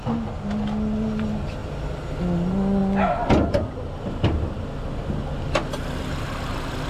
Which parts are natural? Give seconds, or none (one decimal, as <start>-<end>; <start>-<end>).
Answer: 0.0-6.9